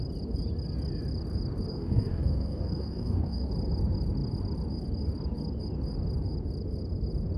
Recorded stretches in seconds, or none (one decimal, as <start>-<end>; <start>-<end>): 0.0-1.7; 3.5-7.4